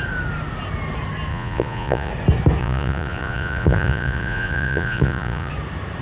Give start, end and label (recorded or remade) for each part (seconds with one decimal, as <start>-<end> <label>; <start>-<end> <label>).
0.0-1.3 recorded; 1.3-2.1 remade; 2.1-2.6 recorded; 2.6-5.5 remade; 5.5-6.0 recorded